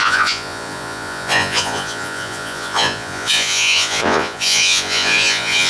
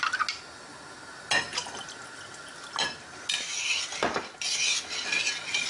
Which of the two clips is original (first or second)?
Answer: second